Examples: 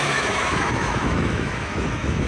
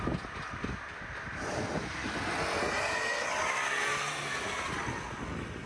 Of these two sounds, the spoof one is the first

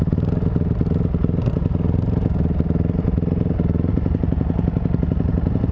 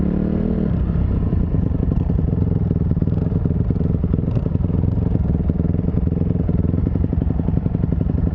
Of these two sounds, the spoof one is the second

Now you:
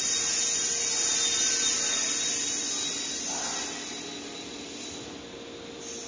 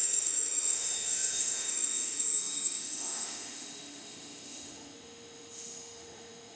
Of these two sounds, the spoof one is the second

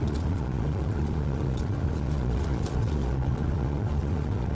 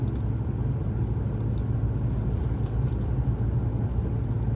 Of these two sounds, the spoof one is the first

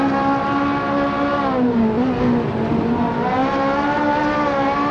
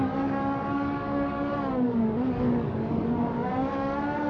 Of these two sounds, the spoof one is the second